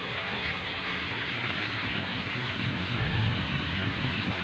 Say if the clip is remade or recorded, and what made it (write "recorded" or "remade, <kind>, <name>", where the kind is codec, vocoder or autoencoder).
remade, codec, SNAC